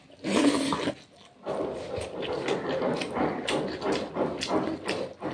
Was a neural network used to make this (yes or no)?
no